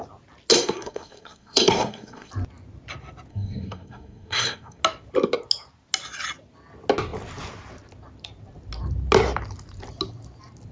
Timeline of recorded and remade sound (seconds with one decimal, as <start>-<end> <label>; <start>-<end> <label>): 0.0-0.5 recorded; 0.5-2.3 remade; 2.3-3.3 recorded; 3.3-4.8 remade; 4.8-10.7 recorded